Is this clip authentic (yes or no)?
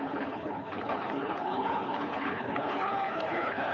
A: no